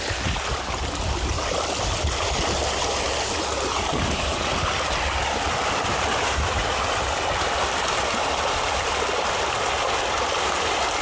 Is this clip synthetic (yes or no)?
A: no